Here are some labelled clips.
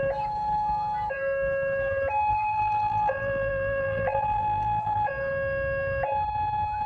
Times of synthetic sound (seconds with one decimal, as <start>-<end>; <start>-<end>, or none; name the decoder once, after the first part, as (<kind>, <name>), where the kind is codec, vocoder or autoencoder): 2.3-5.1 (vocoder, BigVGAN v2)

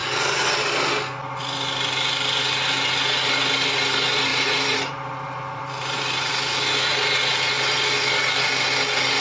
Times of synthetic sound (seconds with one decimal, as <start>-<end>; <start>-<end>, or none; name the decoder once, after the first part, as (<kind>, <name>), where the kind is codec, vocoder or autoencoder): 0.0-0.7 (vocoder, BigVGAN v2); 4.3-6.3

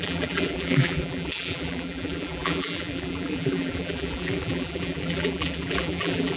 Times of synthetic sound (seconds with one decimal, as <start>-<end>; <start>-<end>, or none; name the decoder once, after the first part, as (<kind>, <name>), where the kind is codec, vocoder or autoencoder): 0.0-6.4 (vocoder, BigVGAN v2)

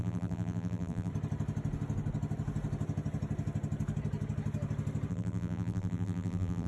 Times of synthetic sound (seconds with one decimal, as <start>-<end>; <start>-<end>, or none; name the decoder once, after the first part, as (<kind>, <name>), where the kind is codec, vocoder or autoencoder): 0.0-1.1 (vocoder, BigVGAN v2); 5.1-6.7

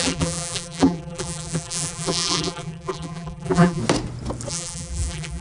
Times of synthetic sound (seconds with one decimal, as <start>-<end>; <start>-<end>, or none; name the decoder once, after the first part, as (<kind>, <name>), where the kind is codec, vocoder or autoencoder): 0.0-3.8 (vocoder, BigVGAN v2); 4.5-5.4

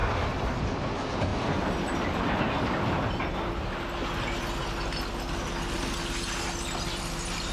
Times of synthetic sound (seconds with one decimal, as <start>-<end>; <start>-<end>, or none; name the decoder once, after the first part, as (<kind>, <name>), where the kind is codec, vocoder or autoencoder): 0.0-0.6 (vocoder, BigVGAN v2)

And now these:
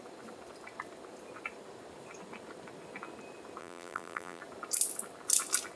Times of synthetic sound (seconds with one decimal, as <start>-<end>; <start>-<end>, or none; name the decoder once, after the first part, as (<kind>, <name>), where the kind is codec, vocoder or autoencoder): 3.6-4.4 (vocoder, BigVGAN v2)